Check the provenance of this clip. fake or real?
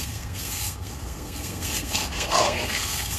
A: fake